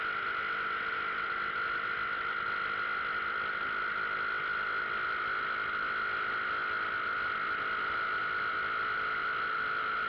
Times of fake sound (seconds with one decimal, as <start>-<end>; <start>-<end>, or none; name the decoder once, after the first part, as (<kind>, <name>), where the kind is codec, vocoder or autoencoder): none